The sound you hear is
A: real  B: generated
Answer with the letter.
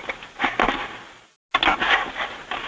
A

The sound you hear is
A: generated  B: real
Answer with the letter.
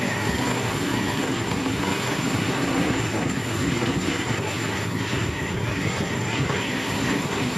A